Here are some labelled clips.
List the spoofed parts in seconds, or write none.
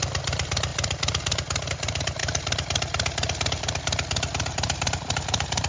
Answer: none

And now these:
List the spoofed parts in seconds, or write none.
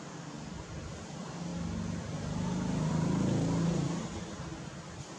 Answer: none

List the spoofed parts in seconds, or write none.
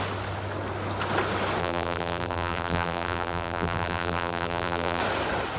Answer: 1.6-5.0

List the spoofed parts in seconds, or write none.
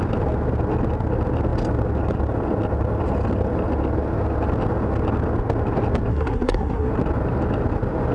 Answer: 6.1-6.9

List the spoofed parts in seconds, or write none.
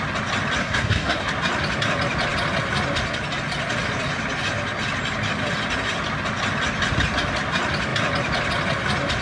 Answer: 0.6-1.3